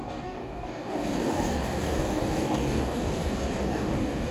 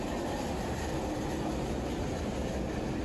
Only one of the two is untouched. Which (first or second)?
second